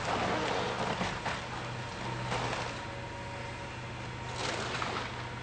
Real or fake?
real